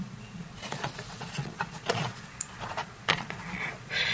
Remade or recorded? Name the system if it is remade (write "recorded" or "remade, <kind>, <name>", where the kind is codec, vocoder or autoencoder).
remade, vocoder, Vocos